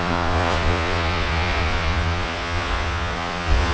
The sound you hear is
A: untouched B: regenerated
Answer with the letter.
B